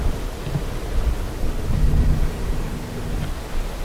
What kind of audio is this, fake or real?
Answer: real